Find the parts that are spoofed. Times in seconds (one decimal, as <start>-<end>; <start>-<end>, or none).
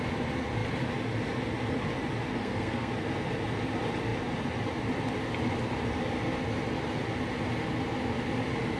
2.3-2.9